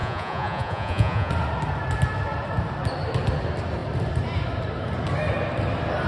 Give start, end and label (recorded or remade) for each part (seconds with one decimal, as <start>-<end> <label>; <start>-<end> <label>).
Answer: 0.0-1.3 remade; 1.3-6.1 recorded

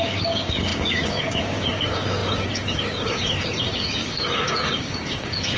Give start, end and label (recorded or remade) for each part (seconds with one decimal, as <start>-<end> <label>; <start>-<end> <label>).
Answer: 0.0-5.6 remade

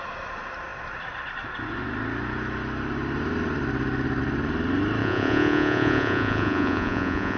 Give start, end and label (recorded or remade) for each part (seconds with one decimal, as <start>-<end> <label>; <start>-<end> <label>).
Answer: 0.0-5.0 recorded; 5.0-7.4 remade

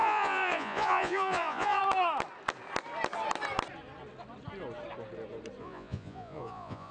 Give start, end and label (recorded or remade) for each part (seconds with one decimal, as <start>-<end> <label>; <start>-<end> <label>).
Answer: 0.0-1.8 remade; 1.8-5.6 recorded; 5.6-6.9 remade

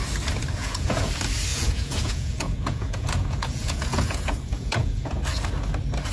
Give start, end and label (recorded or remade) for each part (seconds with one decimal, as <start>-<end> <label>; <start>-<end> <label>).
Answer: 0.0-0.6 recorded; 0.6-1.1 remade; 1.1-1.5 recorded; 1.5-5.2 remade; 5.2-6.1 recorded